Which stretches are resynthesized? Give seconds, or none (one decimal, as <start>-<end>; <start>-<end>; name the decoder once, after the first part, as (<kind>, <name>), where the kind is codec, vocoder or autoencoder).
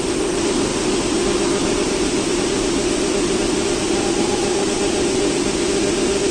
3.8-4.3 (vocoder, BigVGAN v2)